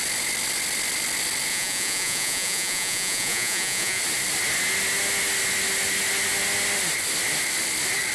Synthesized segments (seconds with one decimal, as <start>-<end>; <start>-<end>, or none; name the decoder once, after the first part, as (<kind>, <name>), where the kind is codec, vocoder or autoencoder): 1.5-4.0 (vocoder, Vocos)